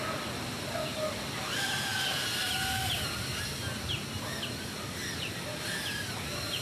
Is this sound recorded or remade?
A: recorded